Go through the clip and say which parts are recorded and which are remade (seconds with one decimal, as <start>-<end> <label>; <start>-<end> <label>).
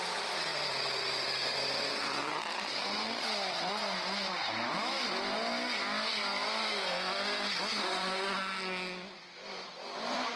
0.0-10.4 recorded